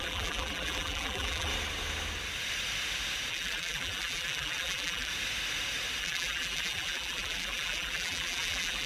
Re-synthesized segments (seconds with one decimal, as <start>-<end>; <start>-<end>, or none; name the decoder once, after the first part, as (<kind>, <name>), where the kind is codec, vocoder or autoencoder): 0.0-1.5 (vocoder, BigVGAN v2); 3.3-5.1; 6.0-8.9